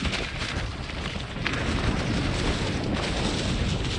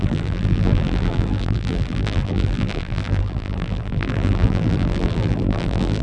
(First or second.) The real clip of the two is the first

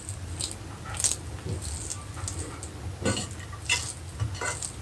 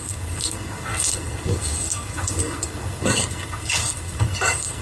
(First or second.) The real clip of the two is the first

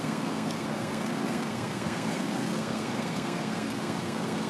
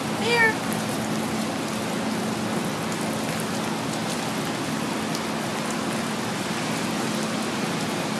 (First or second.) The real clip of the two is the second